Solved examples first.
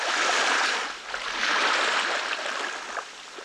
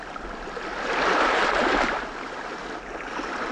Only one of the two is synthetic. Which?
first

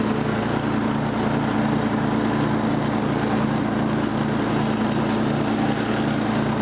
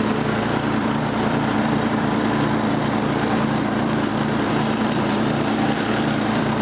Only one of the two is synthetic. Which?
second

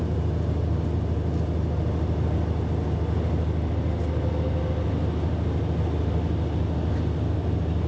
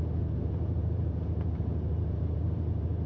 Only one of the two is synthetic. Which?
second